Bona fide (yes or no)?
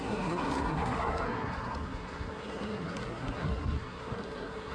no